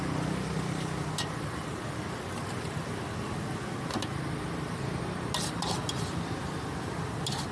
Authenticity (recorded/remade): recorded